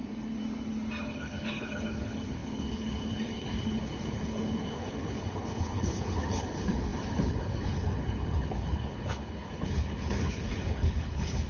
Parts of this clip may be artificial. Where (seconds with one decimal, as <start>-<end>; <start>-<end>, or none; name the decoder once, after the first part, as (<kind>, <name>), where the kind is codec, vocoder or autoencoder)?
1.0-11.5 (codec, HILCodec)